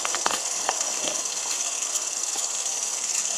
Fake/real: fake